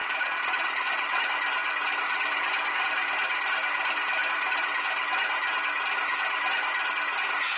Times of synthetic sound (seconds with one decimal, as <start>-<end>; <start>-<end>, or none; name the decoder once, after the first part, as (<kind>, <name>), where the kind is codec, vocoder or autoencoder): 0.0-1.2 (vocoder, Vocos)